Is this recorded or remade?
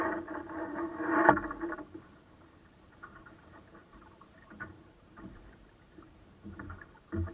remade